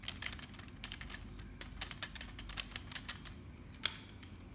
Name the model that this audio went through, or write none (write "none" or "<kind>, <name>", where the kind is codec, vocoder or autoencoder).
none